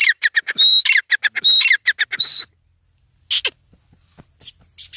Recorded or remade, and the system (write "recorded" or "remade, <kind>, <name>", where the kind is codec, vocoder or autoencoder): recorded